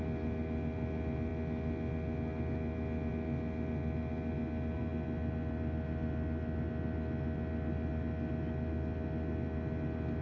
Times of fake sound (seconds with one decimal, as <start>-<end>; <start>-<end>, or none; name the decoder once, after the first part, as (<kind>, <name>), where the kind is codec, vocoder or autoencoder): none